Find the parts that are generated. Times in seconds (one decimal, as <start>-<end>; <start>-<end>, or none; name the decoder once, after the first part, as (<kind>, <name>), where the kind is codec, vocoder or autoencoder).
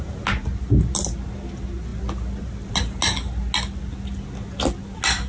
none